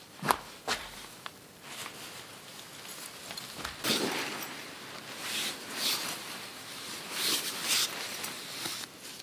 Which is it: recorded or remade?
recorded